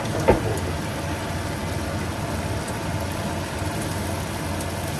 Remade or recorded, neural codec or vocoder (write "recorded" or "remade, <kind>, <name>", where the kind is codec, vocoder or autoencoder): recorded